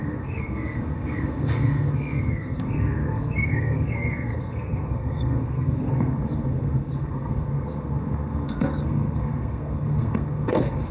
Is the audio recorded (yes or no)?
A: no